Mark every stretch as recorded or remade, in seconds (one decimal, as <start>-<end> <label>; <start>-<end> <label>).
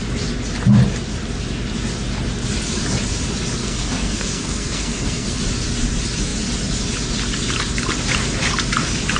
0.0-3.6 recorded; 3.6-5.4 remade; 5.4-9.2 recorded